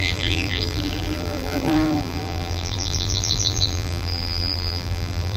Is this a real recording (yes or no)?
no